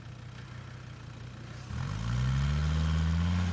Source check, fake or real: real